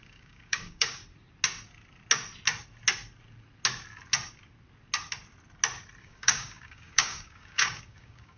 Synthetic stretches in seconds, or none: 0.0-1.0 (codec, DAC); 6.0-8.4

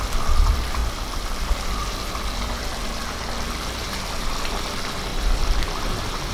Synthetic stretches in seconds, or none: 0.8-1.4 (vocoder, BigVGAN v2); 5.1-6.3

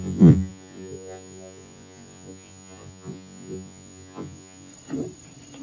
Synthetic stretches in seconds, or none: 0.0-4.7 (vocoder, Vocos)

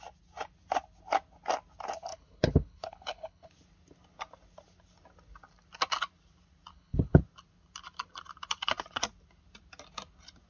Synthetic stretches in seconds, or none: 2.1-3.5 (codec, HILCodec); 6.7-7.2